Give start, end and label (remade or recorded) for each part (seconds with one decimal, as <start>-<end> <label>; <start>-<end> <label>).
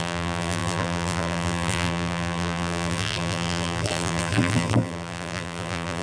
0.0-6.0 remade